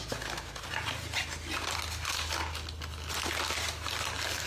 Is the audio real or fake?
real